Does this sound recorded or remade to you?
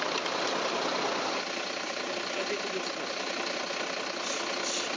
recorded